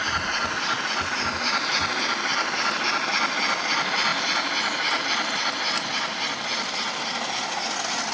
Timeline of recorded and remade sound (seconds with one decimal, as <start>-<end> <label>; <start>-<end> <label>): 0.0-8.1 recorded